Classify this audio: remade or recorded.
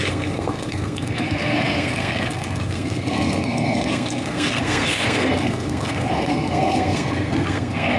remade